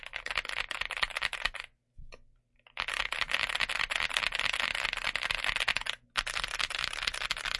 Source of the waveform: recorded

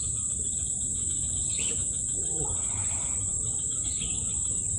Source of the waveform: remade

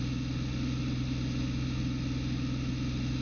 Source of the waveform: recorded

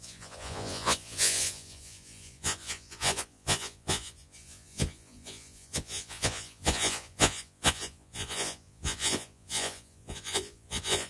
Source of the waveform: remade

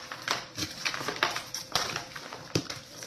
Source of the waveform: remade